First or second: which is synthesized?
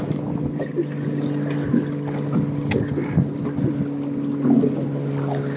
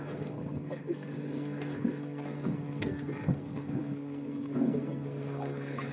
second